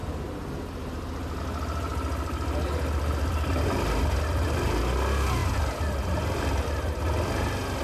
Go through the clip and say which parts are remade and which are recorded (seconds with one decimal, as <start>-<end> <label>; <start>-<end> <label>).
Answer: 0.0-1.9 recorded; 1.9-3.8 remade; 3.8-5.4 recorded; 5.4-6.7 remade; 6.7-7.8 recorded